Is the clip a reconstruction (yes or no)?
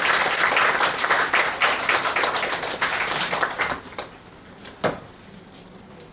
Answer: no